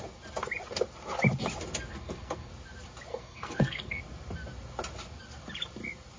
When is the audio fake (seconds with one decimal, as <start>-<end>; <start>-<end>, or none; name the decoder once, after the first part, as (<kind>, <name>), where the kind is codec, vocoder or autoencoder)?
1.9-2.5 (codec, SNAC); 3.1-4.0